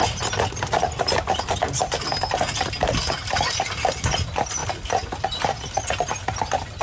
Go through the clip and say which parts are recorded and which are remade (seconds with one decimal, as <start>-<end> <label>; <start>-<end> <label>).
0.0-6.8 recorded